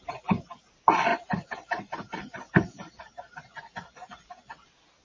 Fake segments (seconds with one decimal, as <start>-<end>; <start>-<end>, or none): 1.1-4.1